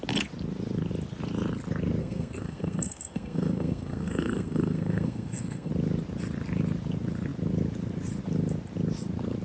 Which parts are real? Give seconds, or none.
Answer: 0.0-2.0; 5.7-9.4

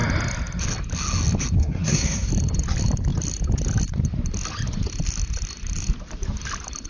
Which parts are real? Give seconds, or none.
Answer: 0.0-1.6; 2.3-6.9

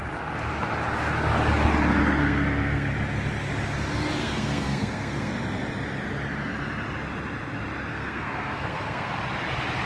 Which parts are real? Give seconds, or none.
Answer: 0.0-2.2; 2.9-4.2; 5.3-7.9; 9.1-9.9

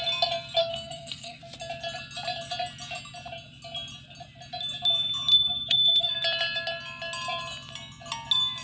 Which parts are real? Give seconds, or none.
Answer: 0.0-0.6; 1.4-5.3; 6.1-8.6